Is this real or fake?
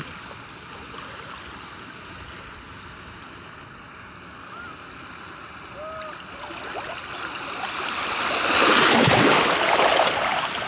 real